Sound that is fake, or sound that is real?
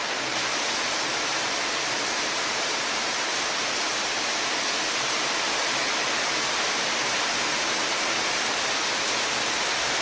fake